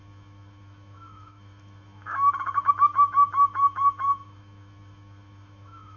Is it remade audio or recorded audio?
remade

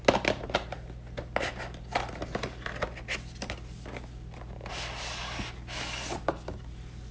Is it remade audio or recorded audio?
recorded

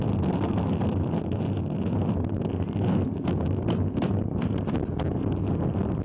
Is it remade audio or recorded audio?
recorded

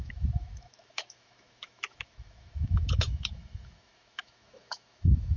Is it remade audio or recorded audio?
remade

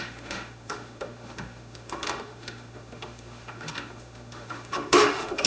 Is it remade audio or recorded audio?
remade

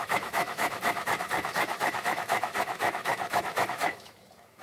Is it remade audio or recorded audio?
remade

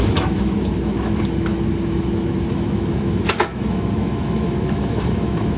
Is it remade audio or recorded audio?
remade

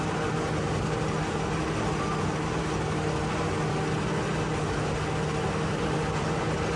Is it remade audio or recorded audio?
recorded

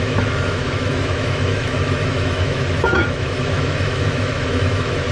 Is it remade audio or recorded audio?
remade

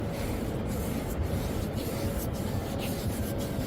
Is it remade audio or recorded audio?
recorded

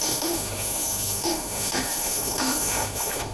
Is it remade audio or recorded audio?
remade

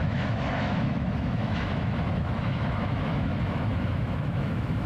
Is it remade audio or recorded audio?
remade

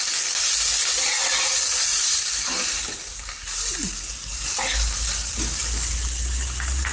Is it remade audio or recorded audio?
recorded